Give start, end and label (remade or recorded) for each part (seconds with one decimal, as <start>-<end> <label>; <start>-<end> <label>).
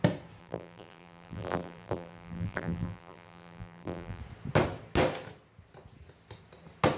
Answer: 0.0-0.4 recorded; 0.4-4.2 remade; 4.2-7.0 recorded